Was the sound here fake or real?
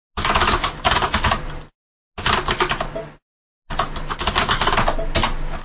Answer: real